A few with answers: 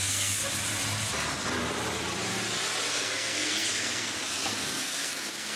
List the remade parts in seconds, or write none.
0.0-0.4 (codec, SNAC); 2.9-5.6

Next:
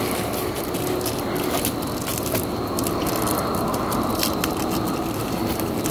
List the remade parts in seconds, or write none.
none

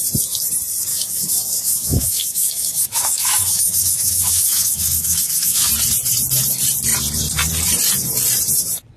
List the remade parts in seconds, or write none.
0.9-5.7 (autoencoder, DAC-VAE)